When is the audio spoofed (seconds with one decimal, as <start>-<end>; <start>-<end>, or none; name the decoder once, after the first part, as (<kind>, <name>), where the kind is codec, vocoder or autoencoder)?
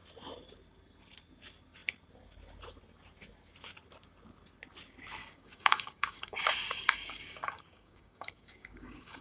5.2-9.2 (codec, DAC)